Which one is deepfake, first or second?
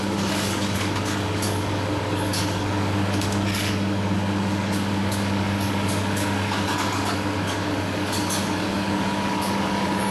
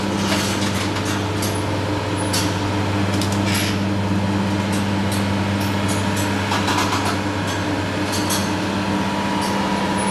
first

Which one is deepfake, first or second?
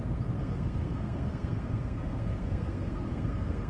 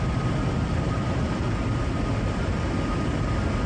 first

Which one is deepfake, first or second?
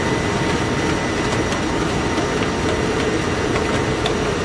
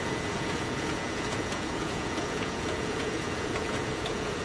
second